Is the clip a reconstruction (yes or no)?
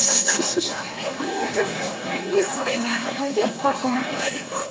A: yes